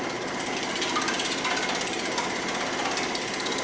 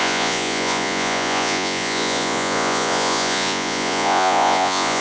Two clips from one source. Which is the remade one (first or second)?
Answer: second